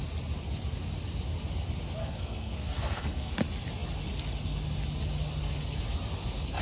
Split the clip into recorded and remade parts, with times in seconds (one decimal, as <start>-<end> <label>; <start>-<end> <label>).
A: 0.0-2.0 recorded; 2.0-3.3 remade; 3.3-6.6 recorded